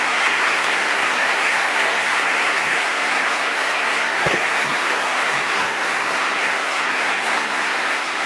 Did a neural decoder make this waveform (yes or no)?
yes